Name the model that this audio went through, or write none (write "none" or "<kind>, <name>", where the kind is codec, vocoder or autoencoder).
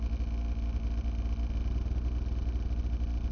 none